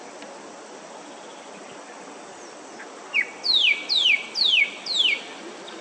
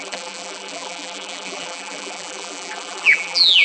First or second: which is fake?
second